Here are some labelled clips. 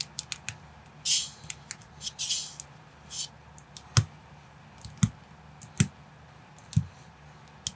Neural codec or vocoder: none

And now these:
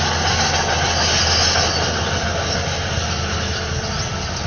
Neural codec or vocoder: none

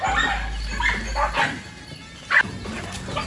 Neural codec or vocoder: none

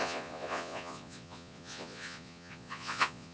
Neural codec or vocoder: vocoder, Vocos